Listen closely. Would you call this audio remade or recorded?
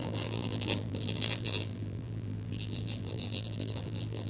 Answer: remade